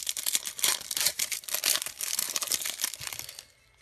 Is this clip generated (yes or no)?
no